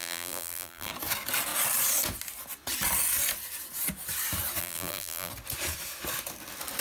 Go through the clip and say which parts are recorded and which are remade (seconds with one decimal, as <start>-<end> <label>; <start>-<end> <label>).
0.0-0.9 remade; 0.9-4.6 recorded; 4.6-5.3 remade; 5.3-6.8 recorded